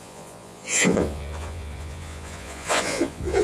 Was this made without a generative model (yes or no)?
no